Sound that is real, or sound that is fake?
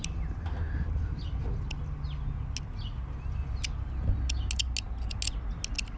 real